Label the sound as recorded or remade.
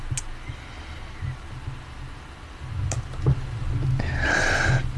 recorded